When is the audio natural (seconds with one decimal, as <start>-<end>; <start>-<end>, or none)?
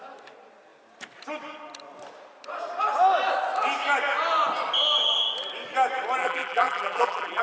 0.0-6.2